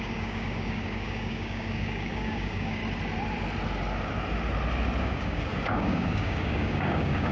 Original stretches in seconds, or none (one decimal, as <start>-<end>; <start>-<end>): 2.8-5.0